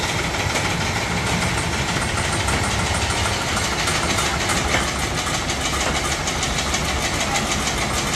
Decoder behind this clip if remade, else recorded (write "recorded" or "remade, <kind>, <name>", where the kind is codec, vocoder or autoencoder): recorded